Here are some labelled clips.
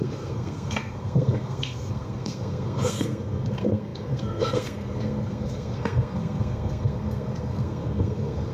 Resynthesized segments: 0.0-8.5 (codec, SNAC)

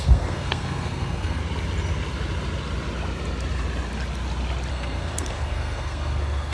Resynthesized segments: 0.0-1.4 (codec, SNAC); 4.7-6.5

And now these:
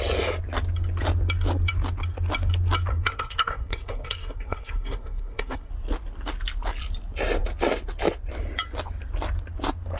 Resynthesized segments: 2.9-5.7 (codec, SNAC)

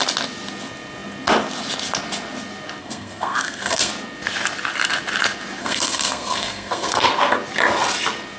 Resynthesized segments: 2.8-3.9 (codec, SNAC); 5.6-7.1